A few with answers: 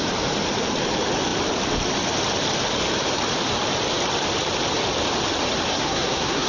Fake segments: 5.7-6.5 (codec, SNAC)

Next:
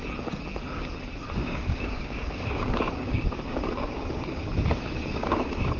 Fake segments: 1.4-4.5 (codec, DAC); 5.1-5.8

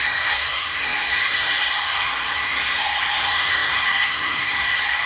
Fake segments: 0.0-5.1 (codec, SNAC)

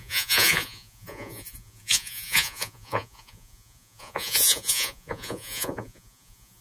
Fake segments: 0.0-6.6 (vocoder, Vocos)

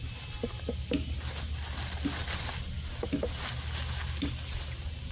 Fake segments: none